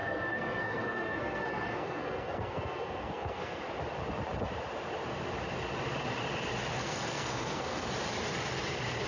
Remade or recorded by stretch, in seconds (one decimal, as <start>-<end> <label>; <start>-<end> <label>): 0.0-3.6 remade; 3.6-6.7 recorded; 6.7-7.9 remade; 7.9-9.1 recorded